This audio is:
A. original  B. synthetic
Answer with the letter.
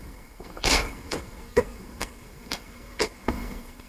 B